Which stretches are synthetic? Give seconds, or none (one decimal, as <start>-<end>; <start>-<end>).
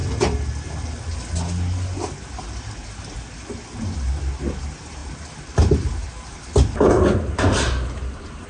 none